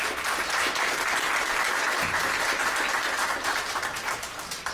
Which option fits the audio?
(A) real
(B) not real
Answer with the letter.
A